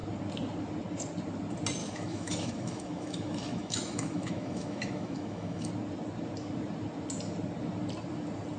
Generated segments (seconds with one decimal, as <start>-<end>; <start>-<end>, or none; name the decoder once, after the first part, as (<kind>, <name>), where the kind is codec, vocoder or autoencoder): 1.8-5.7 (autoencoder, DAC-VAE)

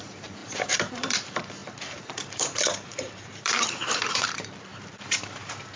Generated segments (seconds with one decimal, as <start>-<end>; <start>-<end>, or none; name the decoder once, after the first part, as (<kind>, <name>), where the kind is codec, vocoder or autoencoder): 0.0-4.7 (vocoder, BigVGAN v2)